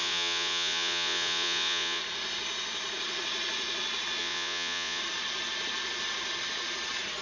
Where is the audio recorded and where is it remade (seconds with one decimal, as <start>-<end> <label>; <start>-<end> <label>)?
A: 0.0-2.0 remade; 2.0-4.2 recorded; 4.2-5.0 remade; 5.0-7.2 recorded